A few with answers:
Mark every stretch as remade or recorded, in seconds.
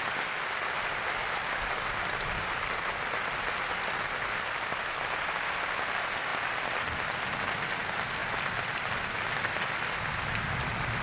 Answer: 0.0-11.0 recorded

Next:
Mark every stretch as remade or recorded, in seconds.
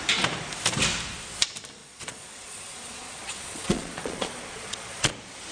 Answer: 0.0-1.8 recorded; 1.8-5.1 remade; 5.1-5.5 recorded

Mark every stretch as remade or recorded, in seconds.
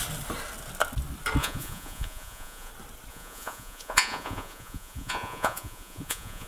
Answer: 0.0-1.4 recorded; 1.4-2.7 remade; 2.7-3.1 recorded; 3.1-6.5 remade